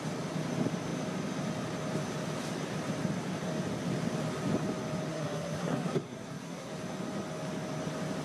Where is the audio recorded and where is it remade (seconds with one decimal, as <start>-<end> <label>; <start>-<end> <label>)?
0.0-5.1 recorded; 5.1-6.7 remade; 6.7-8.2 recorded